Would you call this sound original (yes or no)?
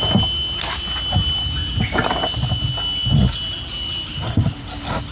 yes